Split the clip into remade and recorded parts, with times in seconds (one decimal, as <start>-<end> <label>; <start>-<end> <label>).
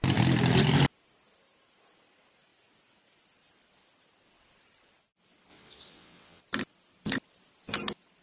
0.0-5.5 recorded; 5.5-6.4 remade; 6.4-8.2 recorded